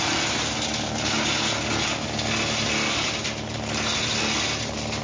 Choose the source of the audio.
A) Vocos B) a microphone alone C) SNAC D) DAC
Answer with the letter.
B